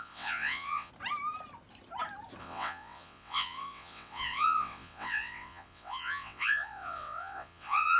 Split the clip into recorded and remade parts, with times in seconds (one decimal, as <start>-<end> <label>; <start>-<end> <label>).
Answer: 0.0-0.9 remade; 0.9-2.4 recorded; 2.4-8.0 remade